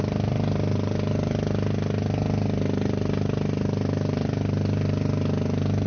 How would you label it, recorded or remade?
recorded